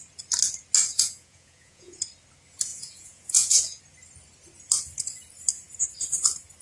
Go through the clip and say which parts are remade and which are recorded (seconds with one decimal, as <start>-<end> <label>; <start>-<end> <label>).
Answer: 0.0-0.9 recorded; 0.9-2.0 remade; 2.0-2.7 recorded; 2.7-3.8 remade; 3.8-6.6 recorded